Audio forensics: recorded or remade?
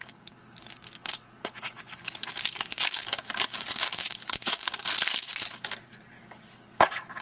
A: remade